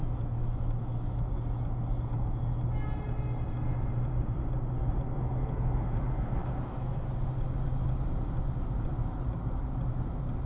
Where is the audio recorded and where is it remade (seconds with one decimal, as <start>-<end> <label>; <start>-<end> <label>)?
0.0-0.4 recorded; 0.4-1.3 remade; 1.3-6.4 recorded; 6.4-7.0 remade; 7.0-10.5 recorded